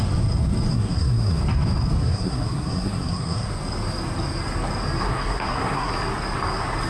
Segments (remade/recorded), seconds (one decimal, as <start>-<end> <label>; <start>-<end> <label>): 0.0-0.7 recorded; 0.7-1.4 remade; 1.4-2.0 recorded; 2.0-3.5 remade; 3.5-5.0 recorded; 5.0-5.9 remade; 5.9-6.9 recorded